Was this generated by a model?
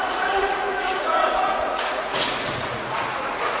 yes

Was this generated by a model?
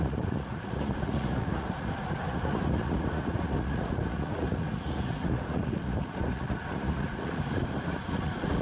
yes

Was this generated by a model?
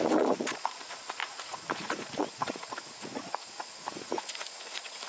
yes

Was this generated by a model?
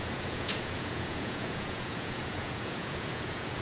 yes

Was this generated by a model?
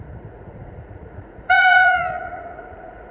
yes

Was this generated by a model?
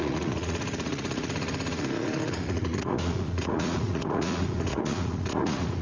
yes